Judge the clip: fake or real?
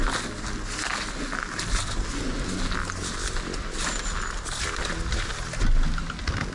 real